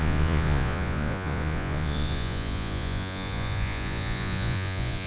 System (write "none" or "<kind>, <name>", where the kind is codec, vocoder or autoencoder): vocoder, Vocos